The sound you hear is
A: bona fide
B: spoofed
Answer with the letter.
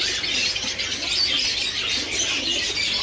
A